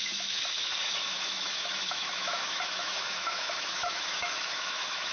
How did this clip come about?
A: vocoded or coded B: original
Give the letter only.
A